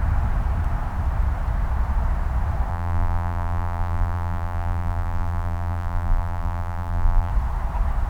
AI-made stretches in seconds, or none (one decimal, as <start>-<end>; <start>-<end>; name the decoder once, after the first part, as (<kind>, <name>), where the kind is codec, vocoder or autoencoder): 2.7-7.3 (vocoder, BigVGAN v2)